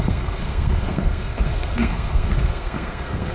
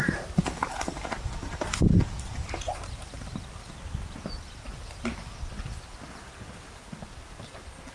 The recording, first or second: second